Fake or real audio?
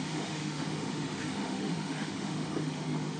fake